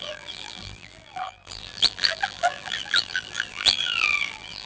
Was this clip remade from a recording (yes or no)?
yes